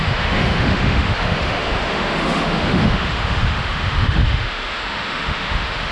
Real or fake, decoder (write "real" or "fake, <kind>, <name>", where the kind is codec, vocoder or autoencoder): fake, autoencoder, DAC-VAE